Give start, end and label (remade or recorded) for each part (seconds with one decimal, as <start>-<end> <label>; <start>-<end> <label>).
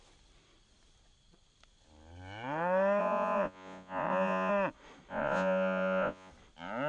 0.0-3.0 recorded; 3.0-4.5 remade; 4.5-5.1 recorded; 5.1-6.3 remade; 6.3-6.9 recorded